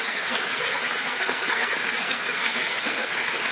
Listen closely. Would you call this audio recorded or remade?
remade